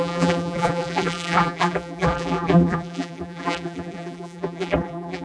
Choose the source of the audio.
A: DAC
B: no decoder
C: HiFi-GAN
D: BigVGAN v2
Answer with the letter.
D